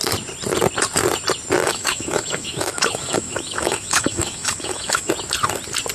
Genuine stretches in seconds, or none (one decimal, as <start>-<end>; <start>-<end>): 0.0-1.6; 5.1-5.9